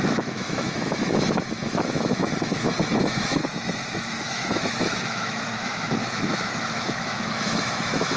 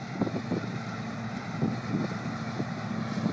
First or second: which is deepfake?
first